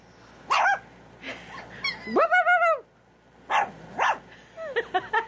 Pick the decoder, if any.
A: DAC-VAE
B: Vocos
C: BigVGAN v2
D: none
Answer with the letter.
D